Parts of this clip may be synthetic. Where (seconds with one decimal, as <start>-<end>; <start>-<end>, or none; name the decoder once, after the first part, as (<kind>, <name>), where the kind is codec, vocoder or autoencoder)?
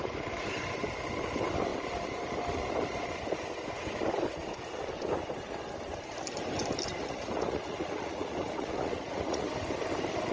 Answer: 6.9-9.5 (vocoder, Vocos)